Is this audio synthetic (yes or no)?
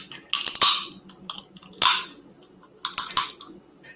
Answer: no